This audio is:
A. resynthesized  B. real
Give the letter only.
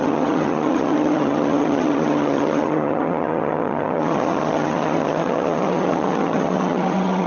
A